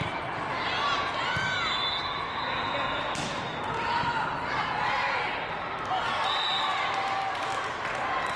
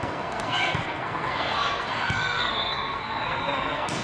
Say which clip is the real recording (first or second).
first